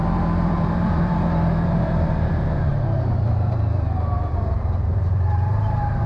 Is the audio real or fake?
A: fake